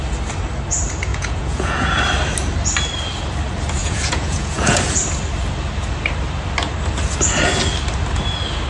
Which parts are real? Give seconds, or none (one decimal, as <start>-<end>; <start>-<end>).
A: 0.0-1.1; 2.0-3.8; 4.8-8.7